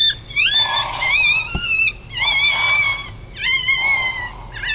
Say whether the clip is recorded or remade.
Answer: recorded